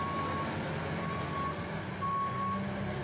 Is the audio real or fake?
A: real